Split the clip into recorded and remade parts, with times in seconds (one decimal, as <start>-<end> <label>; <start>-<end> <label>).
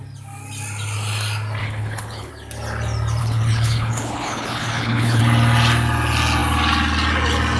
0.0-1.6 recorded; 1.6-2.3 remade; 2.3-3.2 recorded; 3.2-5.2 remade; 5.2-7.6 recorded